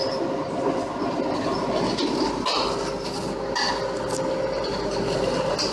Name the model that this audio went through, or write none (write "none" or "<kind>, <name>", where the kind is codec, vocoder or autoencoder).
none